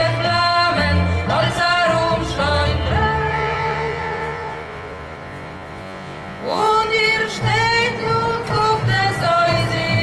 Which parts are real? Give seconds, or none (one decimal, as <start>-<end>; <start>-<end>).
0.0-3.3; 6.7-10.0